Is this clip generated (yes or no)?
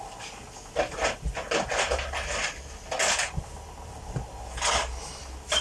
no